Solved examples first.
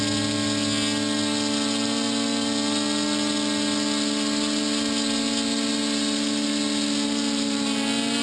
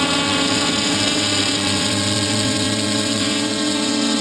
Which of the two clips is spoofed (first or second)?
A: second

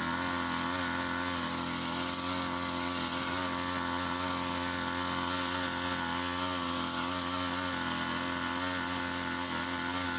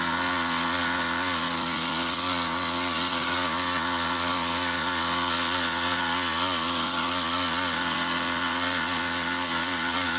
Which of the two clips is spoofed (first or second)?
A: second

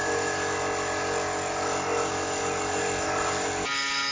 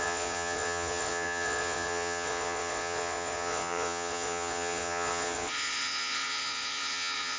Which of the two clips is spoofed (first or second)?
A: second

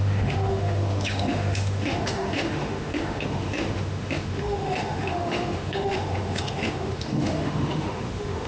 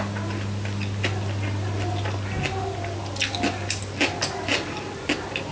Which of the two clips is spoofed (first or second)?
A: first